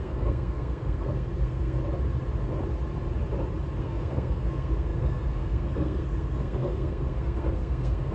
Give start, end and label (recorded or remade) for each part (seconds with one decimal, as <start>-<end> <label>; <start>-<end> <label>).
0.0-1.8 remade; 1.8-3.8 recorded; 3.8-8.1 remade